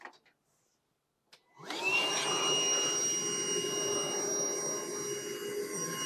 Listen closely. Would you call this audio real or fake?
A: real